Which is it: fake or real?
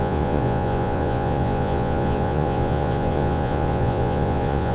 fake